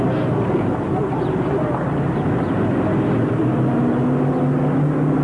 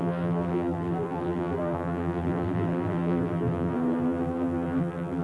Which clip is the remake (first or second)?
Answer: second